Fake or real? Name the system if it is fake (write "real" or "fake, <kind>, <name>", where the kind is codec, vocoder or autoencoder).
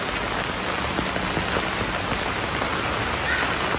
real